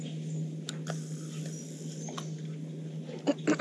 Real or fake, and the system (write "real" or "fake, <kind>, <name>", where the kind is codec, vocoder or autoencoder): real